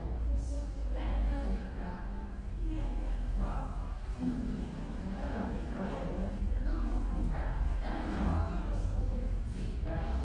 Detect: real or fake fake